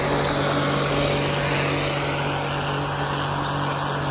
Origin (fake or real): real